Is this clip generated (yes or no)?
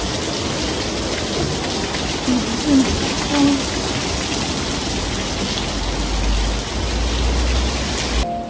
no